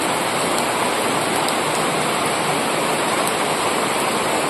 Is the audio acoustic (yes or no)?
yes